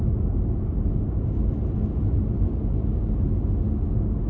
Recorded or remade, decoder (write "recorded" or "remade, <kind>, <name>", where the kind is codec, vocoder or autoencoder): recorded